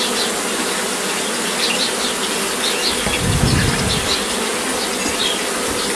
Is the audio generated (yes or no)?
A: no